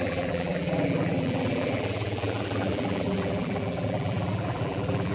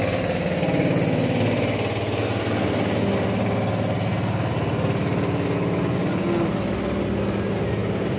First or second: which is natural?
second